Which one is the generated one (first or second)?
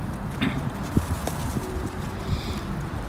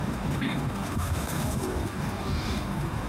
second